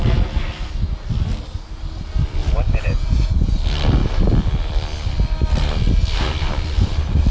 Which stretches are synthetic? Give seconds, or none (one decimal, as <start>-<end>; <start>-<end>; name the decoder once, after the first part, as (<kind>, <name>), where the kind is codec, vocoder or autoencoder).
2.4-3.5 (vocoder, Vocos)